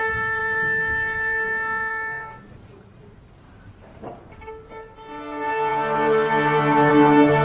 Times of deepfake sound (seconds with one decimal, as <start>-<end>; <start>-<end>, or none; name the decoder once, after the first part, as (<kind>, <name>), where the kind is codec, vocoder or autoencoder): 0.0-7.4 (vocoder, BigVGAN v2)